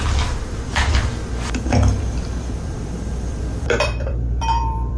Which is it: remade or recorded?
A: remade